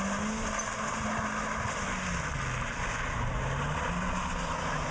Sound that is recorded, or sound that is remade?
recorded